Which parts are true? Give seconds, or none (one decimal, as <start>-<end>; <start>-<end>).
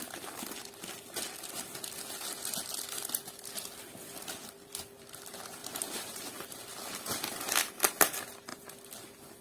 0.0-5.6; 6.7-9.4